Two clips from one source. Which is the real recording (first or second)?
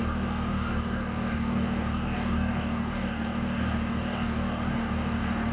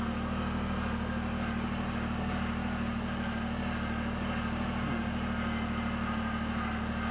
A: second